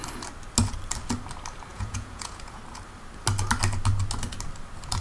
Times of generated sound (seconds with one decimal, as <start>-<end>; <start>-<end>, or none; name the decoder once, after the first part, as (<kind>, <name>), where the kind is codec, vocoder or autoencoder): 1.7-2.6 (vocoder, Vocos)